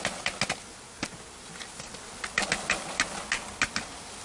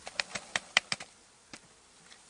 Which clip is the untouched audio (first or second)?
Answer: first